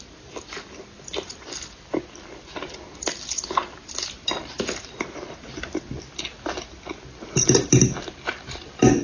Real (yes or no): yes